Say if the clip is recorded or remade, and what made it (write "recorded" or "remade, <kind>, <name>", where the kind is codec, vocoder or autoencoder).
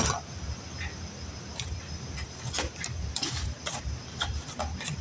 recorded